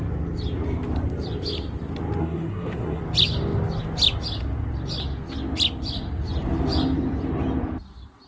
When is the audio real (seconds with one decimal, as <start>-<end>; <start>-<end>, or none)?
0.0-2.2; 3.0-8.3